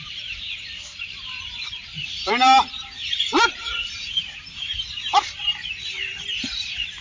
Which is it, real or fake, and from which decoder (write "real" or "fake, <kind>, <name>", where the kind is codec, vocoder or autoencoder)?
fake, vocoder, BigVGAN v2